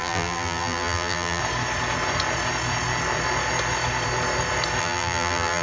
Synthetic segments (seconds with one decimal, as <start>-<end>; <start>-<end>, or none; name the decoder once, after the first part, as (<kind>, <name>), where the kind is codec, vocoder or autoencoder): 0.0-1.4 (vocoder, BigVGAN v2); 4.8-5.6